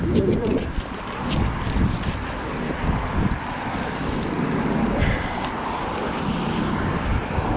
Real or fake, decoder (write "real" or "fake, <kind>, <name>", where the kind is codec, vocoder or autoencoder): fake, vocoder, BigVGAN v2